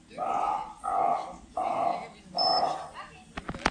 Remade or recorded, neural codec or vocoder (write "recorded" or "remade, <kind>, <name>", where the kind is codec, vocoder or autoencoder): recorded